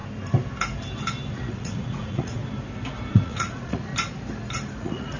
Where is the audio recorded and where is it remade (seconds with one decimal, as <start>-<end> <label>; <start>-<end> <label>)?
0.0-1.3 recorded; 1.3-2.4 remade; 2.4-3.1 recorded; 3.1-3.9 remade; 3.9-4.8 recorded; 4.8-5.2 remade